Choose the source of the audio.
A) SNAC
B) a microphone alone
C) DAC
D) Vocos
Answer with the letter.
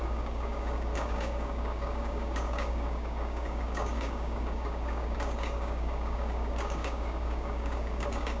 C